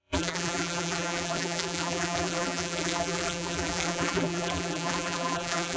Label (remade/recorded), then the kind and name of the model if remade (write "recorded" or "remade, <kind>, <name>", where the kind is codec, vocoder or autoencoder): remade, vocoder, BigVGAN v2